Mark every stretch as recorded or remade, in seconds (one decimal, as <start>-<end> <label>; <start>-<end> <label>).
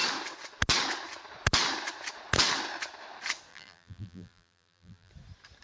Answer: 0.0-3.5 recorded; 3.5-5.1 remade; 5.1-5.6 recorded